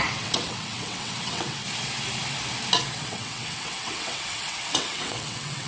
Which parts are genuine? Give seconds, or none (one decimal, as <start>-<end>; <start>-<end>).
1.6-2.9